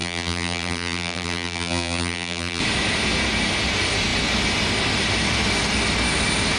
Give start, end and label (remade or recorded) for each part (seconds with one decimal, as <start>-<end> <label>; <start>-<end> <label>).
0.0-2.6 remade; 2.6-6.6 recorded